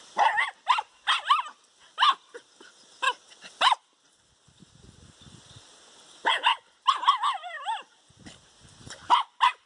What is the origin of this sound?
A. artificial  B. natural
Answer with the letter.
B